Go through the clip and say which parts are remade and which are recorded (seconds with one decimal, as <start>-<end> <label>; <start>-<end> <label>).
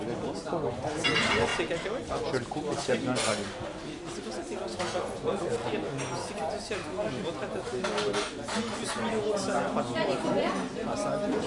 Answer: 0.0-11.5 recorded